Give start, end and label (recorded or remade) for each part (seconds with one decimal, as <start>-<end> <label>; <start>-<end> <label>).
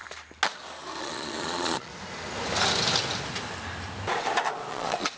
0.0-1.0 recorded; 1.0-1.9 remade; 1.9-4.7 recorded; 4.7-5.2 remade